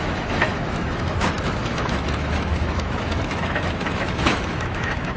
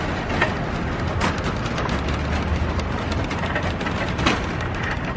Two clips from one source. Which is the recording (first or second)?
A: second